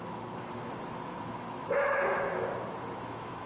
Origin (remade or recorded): remade